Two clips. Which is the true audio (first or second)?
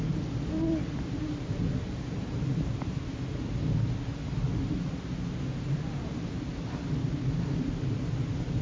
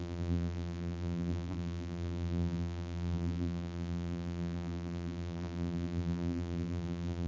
first